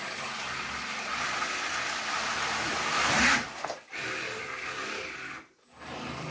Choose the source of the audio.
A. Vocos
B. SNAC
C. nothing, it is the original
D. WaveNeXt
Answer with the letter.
C